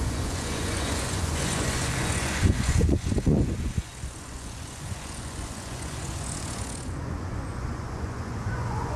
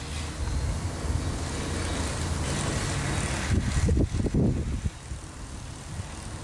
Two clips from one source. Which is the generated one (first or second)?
first